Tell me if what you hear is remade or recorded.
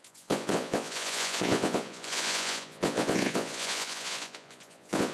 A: remade